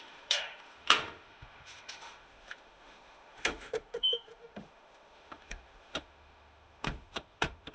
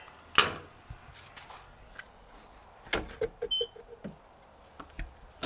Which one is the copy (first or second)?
first